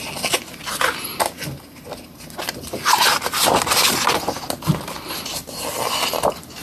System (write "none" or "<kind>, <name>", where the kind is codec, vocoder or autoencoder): none